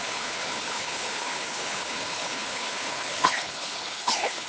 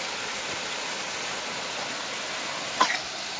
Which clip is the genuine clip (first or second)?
second